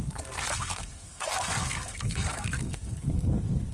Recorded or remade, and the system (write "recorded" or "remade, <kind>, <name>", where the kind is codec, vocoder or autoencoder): remade, codec, SNAC